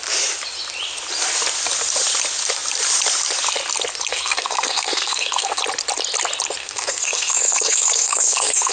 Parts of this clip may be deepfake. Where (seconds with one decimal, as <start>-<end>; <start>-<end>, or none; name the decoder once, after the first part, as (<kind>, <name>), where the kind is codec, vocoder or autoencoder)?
4.1-5.6 (codec, SNAC); 6.6-8.7